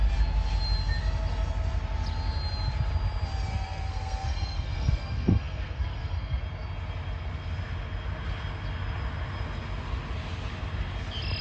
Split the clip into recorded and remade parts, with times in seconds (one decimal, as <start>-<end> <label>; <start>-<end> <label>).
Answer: 0.0-3.5 recorded; 3.5-6.4 remade; 6.4-11.4 recorded